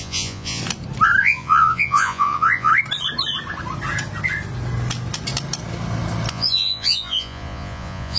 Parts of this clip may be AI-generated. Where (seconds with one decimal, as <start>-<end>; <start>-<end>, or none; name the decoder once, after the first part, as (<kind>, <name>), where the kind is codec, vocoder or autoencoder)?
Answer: 0.0-0.6 (vocoder, Vocos); 1.2-2.7; 6.3-8.2